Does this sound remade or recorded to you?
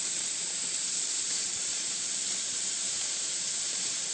remade